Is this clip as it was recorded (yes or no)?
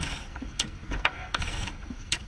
no